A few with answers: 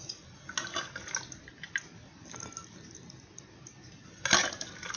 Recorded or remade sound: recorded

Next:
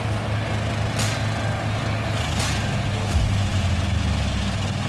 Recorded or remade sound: recorded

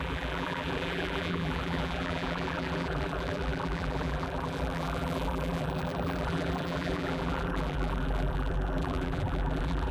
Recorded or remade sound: remade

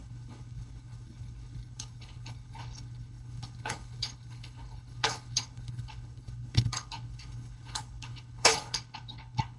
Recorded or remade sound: remade